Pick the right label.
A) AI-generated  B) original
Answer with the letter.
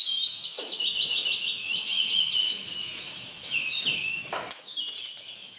A